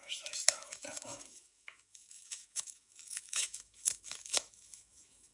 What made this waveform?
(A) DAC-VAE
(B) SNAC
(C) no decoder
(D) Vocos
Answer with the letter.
A